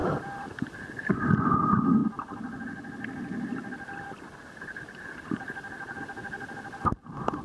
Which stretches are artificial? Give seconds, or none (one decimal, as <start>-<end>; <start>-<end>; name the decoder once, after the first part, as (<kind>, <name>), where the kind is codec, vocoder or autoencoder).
0.0-1.5 (vocoder, BigVGAN v2); 2.0-6.0